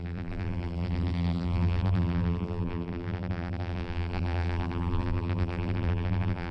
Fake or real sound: fake